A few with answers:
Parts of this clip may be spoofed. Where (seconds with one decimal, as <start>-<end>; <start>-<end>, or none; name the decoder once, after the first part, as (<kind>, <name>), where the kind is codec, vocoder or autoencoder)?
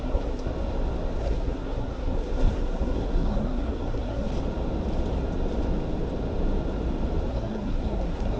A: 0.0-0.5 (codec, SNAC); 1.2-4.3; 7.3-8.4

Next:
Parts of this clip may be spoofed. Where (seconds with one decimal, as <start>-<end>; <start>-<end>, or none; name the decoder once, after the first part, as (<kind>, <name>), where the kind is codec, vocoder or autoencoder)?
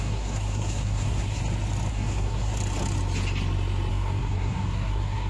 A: 0.0-1.4 (codec, SNAC); 1.9-2.5; 3.9-5.3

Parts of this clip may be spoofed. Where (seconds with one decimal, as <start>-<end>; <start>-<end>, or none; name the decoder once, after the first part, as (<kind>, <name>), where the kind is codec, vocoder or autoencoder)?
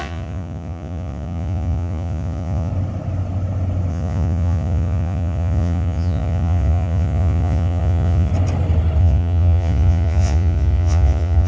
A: 0.0-2.7 (vocoder, Vocos); 3.9-8.3; 9.0-11.5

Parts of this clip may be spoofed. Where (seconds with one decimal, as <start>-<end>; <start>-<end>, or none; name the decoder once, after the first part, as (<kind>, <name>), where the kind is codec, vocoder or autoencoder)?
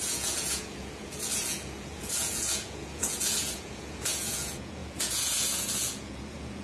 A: 0.0-6.6 (vocoder, Vocos)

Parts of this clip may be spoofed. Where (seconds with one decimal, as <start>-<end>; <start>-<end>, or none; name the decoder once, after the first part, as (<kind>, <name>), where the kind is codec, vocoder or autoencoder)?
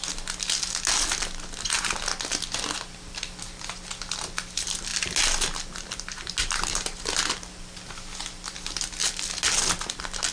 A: none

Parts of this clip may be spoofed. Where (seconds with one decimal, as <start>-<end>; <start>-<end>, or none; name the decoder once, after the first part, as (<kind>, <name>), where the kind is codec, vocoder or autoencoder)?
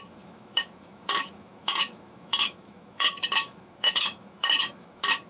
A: 0.0-5.3 (autoencoder, DAC-VAE)